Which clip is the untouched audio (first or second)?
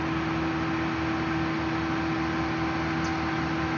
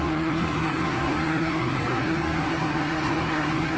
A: first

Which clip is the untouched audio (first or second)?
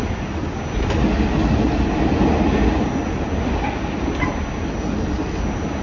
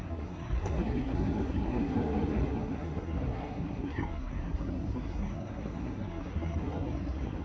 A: first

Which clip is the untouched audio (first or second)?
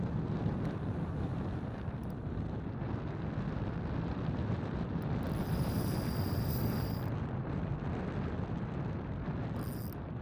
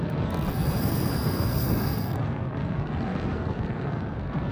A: first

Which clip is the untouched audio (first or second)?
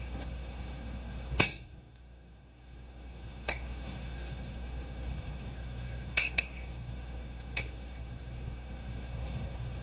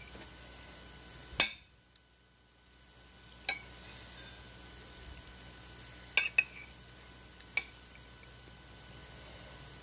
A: second